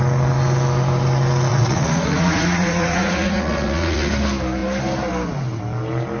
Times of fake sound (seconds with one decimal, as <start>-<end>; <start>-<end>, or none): 1.5-4.1